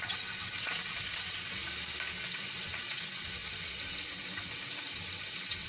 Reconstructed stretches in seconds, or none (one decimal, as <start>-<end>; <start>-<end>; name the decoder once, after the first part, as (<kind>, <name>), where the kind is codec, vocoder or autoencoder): 0.0-1.6 (vocoder, WaveNeXt); 2.3-5.7